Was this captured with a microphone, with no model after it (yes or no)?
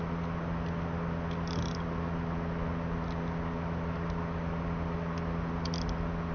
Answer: yes